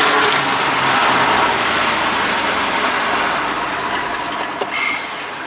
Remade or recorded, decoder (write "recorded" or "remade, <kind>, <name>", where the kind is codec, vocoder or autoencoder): recorded